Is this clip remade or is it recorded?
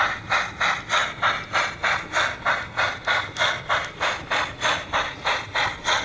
recorded